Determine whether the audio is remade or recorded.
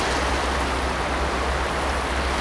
recorded